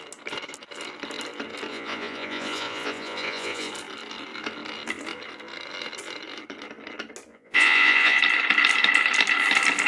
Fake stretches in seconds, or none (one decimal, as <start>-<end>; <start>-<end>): 1.7-3.7; 7.3-8.2